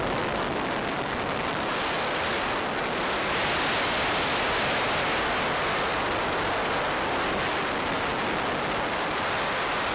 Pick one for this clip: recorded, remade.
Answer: recorded